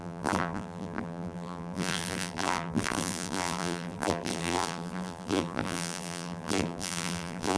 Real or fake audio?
fake